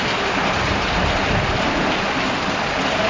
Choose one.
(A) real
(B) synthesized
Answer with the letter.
A